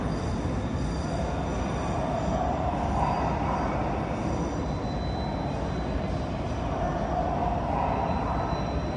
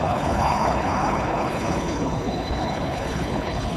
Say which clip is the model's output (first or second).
second